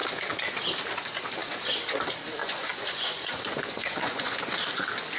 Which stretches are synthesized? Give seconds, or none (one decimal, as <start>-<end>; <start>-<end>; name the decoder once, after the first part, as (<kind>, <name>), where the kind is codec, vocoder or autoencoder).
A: 2.4-4.5 (vocoder, Vocos)

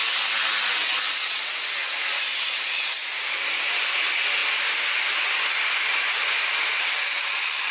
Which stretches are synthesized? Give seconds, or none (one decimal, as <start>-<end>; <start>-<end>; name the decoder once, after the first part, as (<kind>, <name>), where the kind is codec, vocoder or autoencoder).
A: none

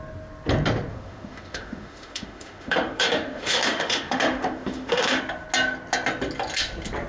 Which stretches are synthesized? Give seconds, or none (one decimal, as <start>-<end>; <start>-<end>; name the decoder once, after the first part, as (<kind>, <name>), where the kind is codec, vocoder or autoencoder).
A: 0.9-5.2 (autoencoder, DAC-VAE)

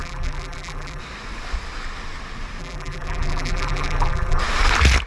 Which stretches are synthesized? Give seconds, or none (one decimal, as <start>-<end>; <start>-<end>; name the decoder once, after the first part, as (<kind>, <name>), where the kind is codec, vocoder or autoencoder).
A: 0.0-1.0 (vocoder, BigVGAN v2); 2.6-4.4